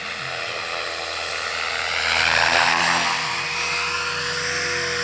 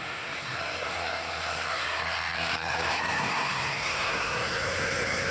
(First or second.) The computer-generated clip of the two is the second